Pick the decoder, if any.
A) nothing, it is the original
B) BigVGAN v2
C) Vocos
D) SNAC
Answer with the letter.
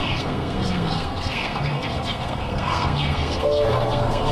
D